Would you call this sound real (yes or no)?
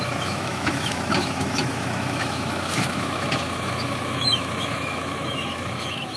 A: no